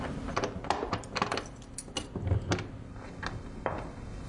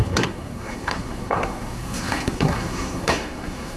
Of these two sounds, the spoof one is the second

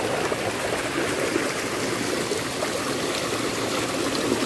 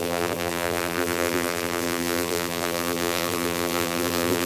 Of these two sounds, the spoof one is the second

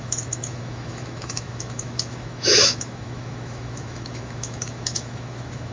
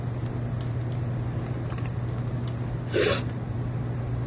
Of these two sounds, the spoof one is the first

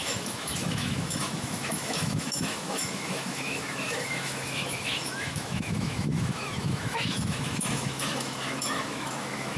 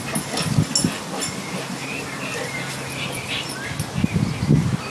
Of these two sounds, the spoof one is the first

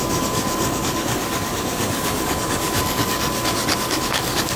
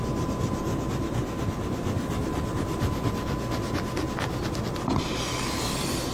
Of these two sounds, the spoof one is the first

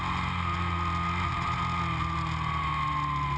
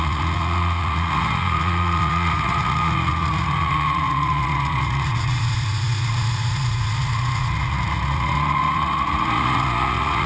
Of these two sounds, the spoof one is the second